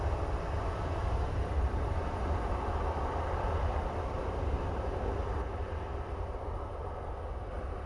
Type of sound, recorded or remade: recorded